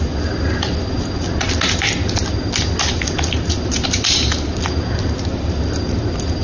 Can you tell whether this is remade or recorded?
recorded